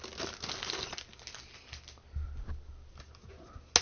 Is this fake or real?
real